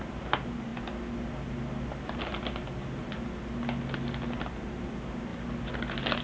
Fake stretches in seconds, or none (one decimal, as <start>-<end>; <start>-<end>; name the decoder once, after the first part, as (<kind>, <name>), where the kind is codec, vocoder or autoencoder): none